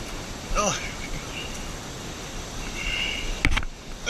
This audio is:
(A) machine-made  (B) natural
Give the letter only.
B